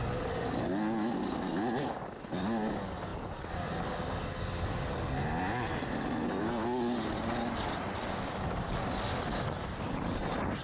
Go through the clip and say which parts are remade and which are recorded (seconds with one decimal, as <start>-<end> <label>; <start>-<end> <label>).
0.0-10.6 recorded

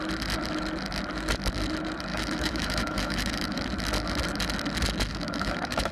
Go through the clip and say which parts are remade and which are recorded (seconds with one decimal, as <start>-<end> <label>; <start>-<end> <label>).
0.0-2.1 recorded; 2.1-3.6 remade; 3.6-5.1 recorded; 5.1-5.9 remade

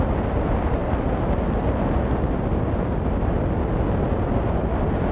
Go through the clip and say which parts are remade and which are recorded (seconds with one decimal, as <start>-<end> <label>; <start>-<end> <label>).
0.0-5.1 recorded

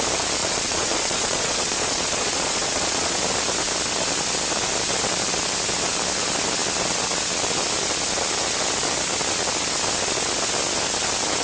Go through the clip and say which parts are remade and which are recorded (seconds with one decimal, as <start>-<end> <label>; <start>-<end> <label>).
0.0-0.4 recorded; 0.4-3.2 remade; 3.2-11.4 recorded

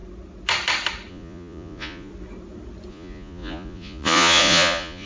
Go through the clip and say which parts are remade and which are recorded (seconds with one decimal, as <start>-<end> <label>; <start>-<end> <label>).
0.0-1.1 recorded; 1.1-2.1 remade; 2.1-2.9 recorded; 2.9-5.1 remade

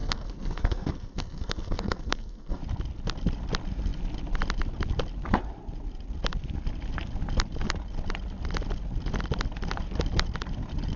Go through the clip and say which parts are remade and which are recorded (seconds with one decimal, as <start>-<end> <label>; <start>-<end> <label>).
0.0-2.6 remade; 2.6-11.0 recorded